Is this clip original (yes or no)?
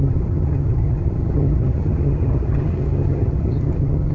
no